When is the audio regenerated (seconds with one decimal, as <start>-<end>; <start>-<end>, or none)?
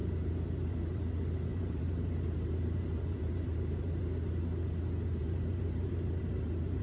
0.0-1.0; 1.5-4.0; 5.2-6.8